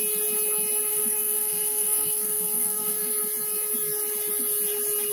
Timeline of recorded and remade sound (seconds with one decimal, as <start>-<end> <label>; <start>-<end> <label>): 0.0-0.9 recorded; 0.9-3.1 remade; 3.1-5.1 recorded